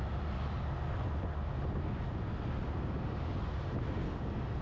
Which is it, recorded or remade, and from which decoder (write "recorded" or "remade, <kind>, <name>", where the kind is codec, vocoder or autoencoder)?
recorded